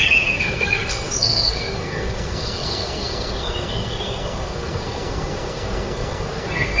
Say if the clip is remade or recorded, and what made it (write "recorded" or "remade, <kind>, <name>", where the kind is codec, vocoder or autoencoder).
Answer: remade, codec, SNAC